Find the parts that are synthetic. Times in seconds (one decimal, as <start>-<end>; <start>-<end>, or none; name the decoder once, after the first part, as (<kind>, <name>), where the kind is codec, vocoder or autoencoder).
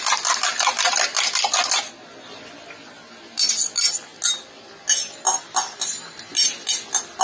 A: none